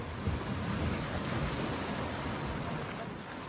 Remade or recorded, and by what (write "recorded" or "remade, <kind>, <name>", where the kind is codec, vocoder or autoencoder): recorded